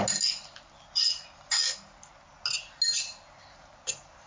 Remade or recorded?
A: recorded